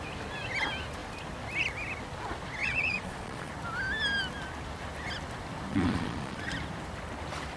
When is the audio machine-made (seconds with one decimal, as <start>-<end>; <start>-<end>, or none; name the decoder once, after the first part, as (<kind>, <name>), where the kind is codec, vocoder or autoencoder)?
2.6-3.5 (vocoder, Vocos); 5.7-6.4